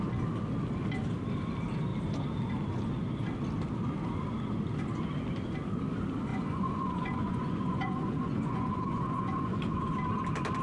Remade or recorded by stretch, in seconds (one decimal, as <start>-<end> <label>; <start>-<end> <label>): 0.0-6.3 recorded; 6.3-9.8 remade; 9.8-10.6 recorded